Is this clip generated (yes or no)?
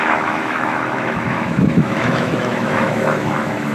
yes